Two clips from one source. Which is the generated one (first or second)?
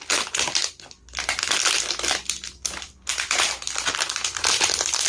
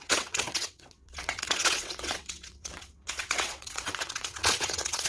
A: second